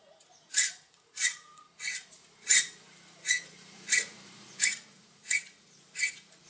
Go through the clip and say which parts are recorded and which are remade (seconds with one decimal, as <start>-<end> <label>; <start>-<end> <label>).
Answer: 0.0-6.5 remade